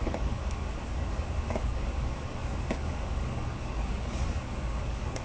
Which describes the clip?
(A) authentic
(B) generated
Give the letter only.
B